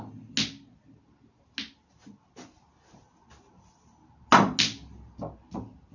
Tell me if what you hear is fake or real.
real